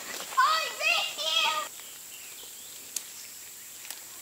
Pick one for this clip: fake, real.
fake